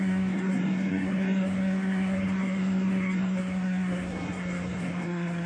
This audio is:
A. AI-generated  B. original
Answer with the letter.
A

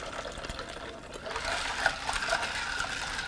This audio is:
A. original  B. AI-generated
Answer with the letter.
A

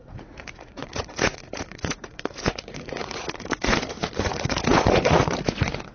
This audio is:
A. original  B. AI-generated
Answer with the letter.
B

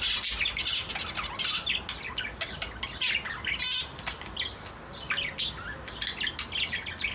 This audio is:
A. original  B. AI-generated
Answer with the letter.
A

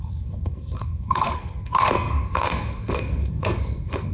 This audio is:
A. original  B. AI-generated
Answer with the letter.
B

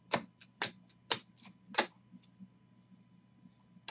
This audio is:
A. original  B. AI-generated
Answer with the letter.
A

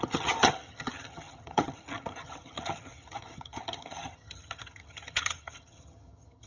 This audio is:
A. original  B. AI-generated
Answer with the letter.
B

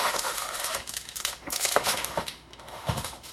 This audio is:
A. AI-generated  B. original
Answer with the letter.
A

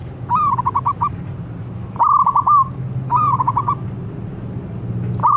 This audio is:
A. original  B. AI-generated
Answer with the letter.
A